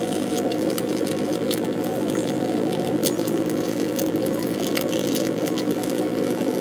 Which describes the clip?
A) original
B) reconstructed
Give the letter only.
B